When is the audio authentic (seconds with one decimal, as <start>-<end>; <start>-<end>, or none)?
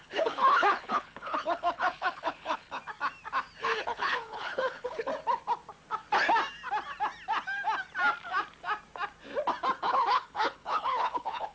2.8-3.6; 5.1-9.8